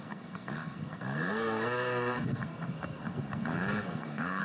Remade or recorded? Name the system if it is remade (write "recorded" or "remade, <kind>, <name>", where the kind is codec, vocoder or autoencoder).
remade, codec, SNAC